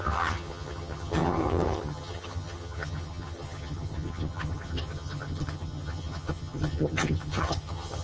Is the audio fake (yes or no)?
yes